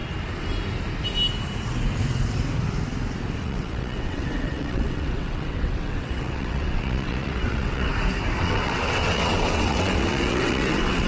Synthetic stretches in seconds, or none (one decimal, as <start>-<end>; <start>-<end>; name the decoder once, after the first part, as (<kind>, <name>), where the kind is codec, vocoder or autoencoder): 3.4-7.9 (vocoder, WaveNeXt); 8.4-11.1